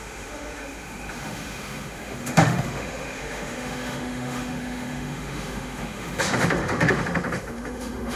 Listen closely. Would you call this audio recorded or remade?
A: remade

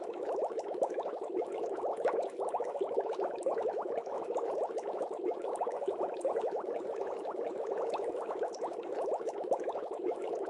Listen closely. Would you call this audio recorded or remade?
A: remade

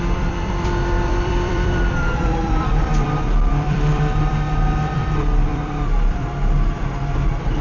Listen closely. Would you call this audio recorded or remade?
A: remade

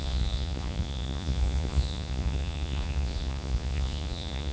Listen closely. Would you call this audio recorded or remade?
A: remade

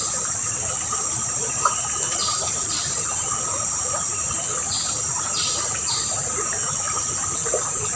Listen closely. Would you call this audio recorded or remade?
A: recorded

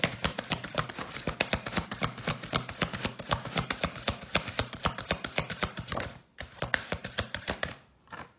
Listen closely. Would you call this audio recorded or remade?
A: remade